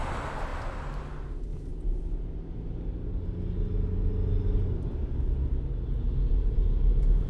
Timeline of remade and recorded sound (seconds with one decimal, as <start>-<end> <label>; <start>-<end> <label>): 0.0-7.3 recorded